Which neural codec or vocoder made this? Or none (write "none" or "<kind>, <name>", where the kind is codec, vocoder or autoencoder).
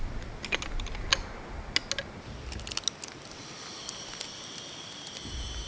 none